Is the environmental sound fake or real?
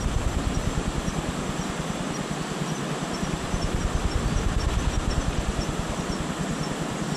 fake